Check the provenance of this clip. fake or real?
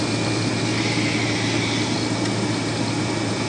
real